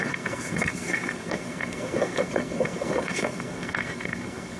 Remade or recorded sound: remade